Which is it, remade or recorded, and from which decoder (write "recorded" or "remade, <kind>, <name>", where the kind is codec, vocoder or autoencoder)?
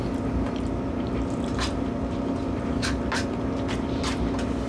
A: recorded